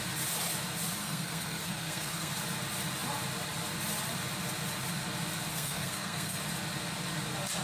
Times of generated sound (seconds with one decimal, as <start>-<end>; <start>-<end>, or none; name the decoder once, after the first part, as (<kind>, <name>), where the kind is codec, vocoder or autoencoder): 1.0-2.3 (codec, SNAC); 5.5-6.4

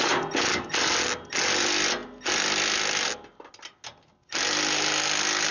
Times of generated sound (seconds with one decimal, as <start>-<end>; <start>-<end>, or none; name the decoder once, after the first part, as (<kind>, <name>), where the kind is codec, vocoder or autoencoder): none

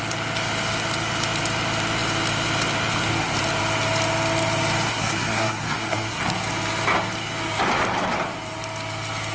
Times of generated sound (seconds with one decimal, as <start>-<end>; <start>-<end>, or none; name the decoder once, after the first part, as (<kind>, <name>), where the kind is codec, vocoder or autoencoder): 4.9-6.2 (codec, SNAC)